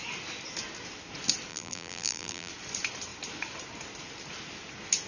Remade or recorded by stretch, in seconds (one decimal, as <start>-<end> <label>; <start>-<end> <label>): 0.0-1.5 recorded; 1.5-2.5 remade; 2.5-5.1 recorded